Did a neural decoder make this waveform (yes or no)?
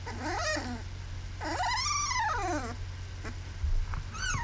no